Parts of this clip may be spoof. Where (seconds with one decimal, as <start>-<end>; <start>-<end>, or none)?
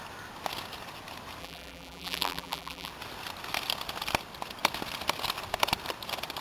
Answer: 1.4-2.9